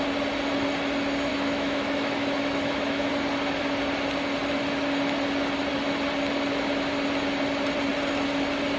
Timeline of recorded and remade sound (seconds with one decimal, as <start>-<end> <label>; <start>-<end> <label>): 0.0-1.3 recorded; 1.3-3.1 remade; 3.1-8.8 recorded

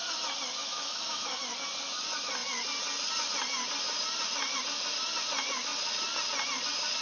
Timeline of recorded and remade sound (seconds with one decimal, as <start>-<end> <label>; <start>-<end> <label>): 0.0-0.6 recorded; 0.6-1.4 remade; 1.4-7.0 recorded

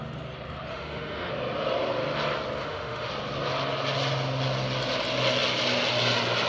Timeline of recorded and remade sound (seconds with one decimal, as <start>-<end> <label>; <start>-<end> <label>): 0.0-0.7 recorded; 0.7-1.3 remade; 1.3-2.6 recorded; 2.6-3.1 remade; 3.1-6.5 recorded